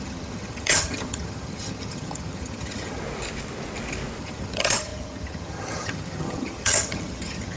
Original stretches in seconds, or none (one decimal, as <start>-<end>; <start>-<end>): 3.0-4.2